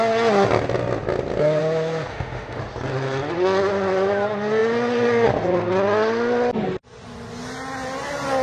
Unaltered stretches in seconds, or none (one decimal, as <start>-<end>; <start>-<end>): 0.0-2.1; 2.6-8.4